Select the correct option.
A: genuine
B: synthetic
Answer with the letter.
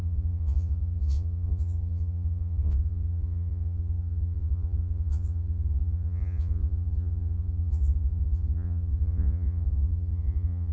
B